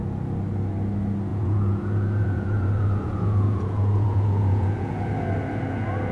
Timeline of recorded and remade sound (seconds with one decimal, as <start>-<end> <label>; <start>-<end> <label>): 0.0-1.3 recorded; 1.3-5.0 remade; 5.0-6.1 recorded